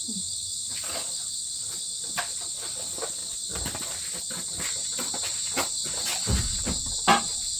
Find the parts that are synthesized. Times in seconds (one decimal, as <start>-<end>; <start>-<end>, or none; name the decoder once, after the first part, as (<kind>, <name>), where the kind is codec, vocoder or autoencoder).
none